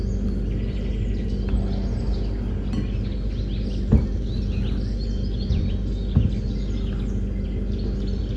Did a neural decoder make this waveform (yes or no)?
no